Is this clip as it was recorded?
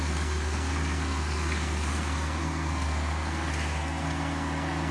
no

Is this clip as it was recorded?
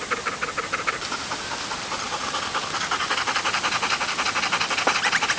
yes